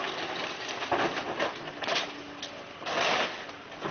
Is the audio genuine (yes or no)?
yes